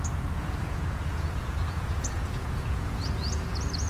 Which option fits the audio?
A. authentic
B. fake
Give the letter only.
B